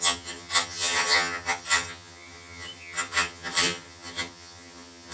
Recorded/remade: remade